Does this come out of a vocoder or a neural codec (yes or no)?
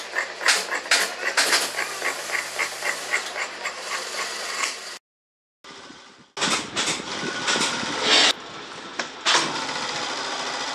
no